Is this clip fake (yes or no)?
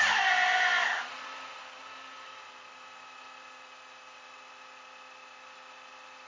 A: no